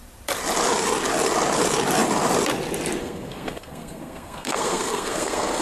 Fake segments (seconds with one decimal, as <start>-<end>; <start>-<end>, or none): 3.0-5.6